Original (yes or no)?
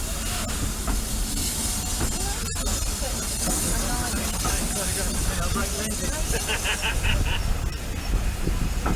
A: yes